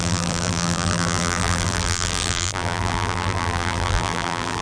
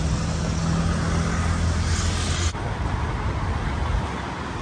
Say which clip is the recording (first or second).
second